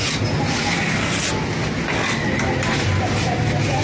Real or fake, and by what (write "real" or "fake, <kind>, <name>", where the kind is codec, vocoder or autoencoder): real